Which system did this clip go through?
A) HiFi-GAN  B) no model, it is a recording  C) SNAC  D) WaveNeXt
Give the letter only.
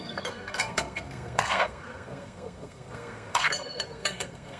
C